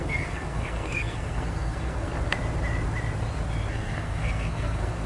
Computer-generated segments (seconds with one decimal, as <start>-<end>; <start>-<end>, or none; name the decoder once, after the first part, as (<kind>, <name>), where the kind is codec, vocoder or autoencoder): 0.0-2.1 (codec, SNAC); 3.7-5.1